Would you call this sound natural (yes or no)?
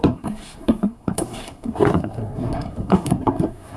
no